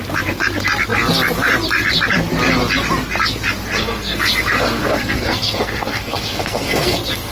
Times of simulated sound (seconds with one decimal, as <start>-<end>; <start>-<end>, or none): 3.8-7.3